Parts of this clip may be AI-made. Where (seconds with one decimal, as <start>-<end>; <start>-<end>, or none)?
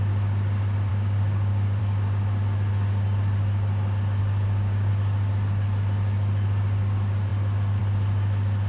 0.9-1.8; 4.2-4.9